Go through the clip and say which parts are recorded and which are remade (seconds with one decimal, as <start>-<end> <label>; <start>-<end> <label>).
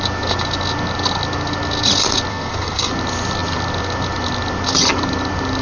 0.0-2.3 recorded; 2.3-2.9 remade; 2.9-5.6 recorded